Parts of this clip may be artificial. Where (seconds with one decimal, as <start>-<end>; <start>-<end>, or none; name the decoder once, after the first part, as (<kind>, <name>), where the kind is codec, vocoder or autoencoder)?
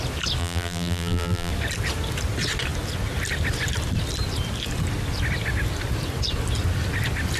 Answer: 0.4-1.5 (vocoder, BigVGAN v2)